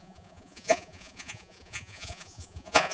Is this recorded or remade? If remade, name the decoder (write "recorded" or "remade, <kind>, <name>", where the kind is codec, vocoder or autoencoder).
remade, vocoder, Vocos